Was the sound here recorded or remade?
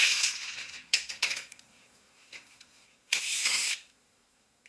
remade